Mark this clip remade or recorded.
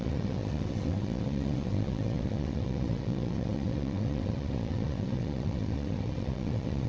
remade